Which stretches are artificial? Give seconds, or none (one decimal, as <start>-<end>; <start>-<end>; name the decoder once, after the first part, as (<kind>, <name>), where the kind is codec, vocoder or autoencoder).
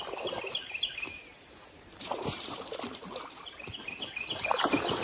1.1-3.6 (vocoder, BigVGAN v2)